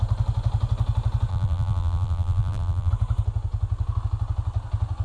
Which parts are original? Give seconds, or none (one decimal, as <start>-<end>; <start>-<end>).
0.0-1.3; 2.9-5.0